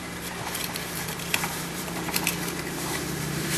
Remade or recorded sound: remade